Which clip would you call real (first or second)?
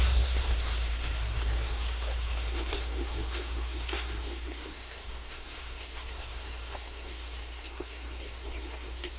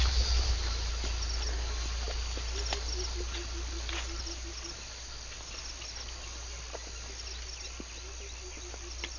second